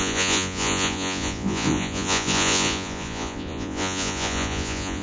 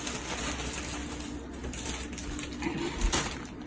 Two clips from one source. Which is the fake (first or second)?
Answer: first